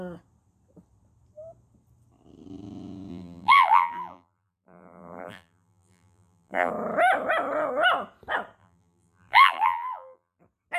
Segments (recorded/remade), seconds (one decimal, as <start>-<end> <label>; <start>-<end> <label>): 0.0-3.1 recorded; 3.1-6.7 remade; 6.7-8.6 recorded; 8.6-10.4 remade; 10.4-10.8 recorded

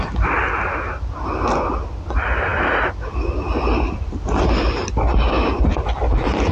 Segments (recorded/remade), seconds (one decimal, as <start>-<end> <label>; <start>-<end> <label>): 0.0-6.5 recorded

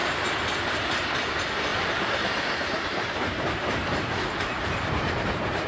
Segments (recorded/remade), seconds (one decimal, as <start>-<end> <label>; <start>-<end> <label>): 0.0-0.6 recorded; 0.6-5.7 remade

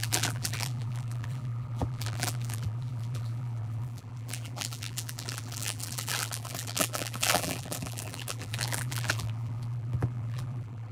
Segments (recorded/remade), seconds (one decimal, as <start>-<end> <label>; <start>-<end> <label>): 0.0-10.9 remade

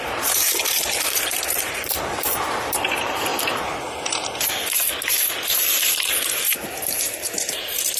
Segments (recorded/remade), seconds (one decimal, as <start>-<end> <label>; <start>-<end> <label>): 0.0-3.3 remade; 3.3-7.0 recorded; 7.0-8.0 remade